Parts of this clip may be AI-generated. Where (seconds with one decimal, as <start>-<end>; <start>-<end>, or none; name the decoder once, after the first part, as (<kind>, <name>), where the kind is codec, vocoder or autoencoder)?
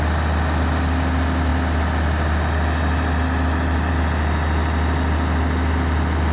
none